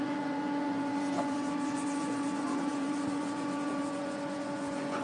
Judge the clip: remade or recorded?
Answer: remade